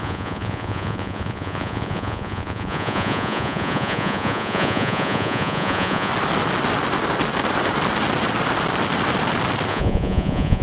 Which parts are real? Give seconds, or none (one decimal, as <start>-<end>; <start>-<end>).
6.1-9.7